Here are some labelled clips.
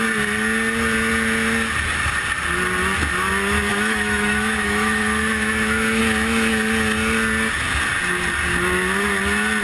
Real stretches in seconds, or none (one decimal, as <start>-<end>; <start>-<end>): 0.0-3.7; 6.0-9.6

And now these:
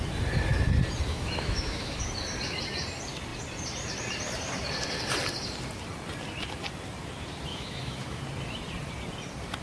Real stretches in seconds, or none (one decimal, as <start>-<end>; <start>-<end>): 0.0-1.1; 2.0-7.5; 8.2-9.6

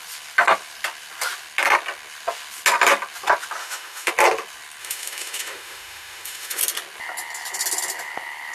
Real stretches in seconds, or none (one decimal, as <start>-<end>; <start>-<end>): 0.0-3.6; 4.1-4.8; 6.6-8.5

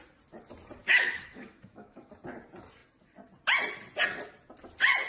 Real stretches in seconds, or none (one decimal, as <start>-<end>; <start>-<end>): 0.0-0.8; 2.1-5.1

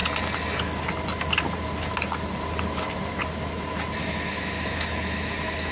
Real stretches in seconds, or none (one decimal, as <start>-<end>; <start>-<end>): 0.0-4.0

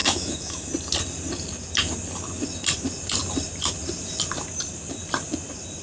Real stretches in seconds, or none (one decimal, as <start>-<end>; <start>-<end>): 0.7-5.8